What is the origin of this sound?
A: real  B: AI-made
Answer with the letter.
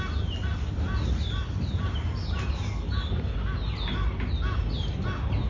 A